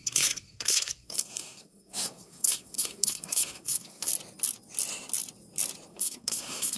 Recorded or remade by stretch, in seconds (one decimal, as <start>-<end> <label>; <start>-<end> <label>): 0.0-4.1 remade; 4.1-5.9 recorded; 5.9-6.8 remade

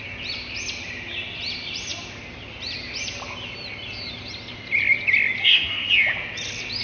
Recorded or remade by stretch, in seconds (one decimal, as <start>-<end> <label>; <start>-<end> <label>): 0.0-5.4 recorded; 5.4-5.9 remade; 5.9-6.8 recorded

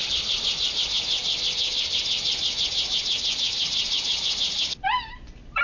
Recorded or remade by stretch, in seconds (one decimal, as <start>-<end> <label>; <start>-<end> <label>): 0.0-0.7 recorded; 0.7-1.2 remade; 1.2-4.0 recorded; 4.0-5.6 remade